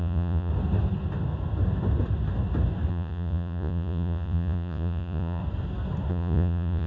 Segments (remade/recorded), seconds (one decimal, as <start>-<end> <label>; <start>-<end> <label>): 0.0-0.5 remade; 0.5-2.9 recorded; 2.9-5.4 remade; 5.4-6.1 recorded; 6.1-6.9 remade